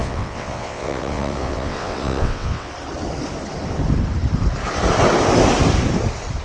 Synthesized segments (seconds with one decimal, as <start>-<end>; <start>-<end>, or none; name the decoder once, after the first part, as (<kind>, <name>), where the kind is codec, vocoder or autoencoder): 0.0-2.7 (vocoder, WaveNeXt)